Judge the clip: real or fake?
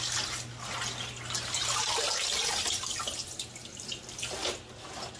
real